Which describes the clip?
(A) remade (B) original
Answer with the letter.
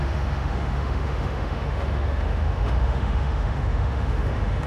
A